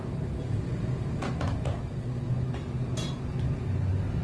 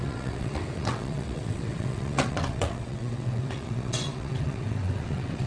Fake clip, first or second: second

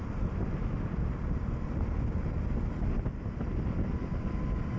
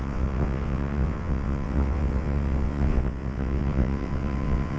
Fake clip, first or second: second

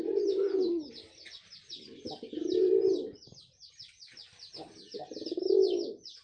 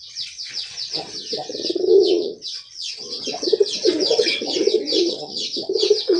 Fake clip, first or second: second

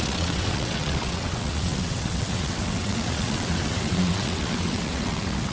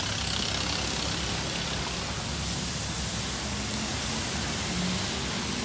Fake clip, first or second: first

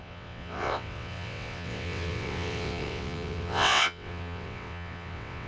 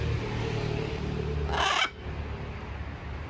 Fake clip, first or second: first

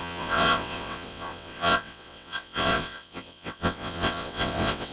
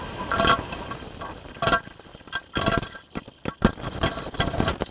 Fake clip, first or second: first